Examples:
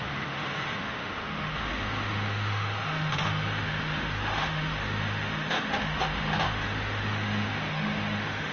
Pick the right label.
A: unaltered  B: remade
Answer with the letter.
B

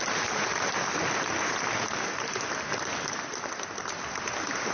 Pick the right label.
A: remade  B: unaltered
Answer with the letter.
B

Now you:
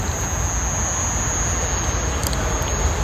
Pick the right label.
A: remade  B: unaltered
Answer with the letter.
B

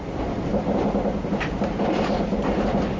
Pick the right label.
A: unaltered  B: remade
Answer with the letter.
A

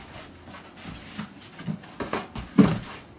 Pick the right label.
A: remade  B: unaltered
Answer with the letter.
B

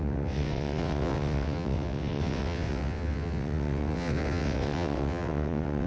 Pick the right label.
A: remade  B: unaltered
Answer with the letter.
A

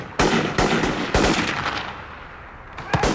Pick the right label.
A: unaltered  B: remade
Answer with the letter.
A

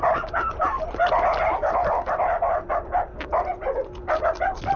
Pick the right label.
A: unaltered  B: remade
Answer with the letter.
A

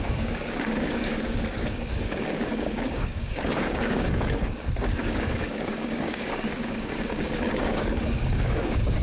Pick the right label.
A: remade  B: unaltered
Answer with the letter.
A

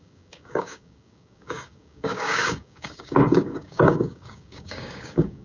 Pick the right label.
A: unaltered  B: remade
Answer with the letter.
B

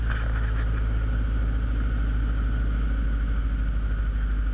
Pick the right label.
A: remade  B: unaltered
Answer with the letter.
B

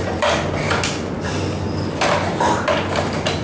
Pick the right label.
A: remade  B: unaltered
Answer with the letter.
B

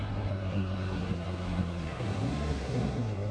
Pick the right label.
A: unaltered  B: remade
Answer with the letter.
B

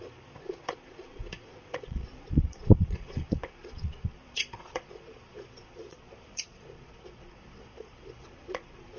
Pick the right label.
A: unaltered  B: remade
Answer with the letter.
B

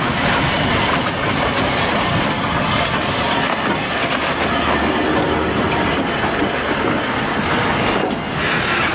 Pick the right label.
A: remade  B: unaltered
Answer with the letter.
B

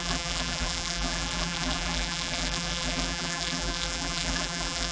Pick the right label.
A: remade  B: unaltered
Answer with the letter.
A